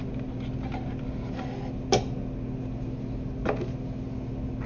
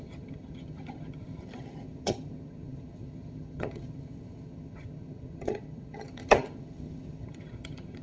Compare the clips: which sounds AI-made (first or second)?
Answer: second